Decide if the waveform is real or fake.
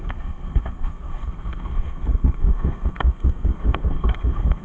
fake